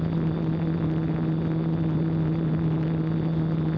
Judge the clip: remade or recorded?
recorded